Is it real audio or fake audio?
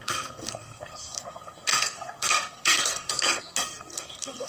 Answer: fake